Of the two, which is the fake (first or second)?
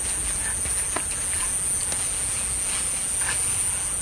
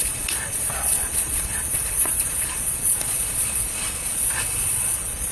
second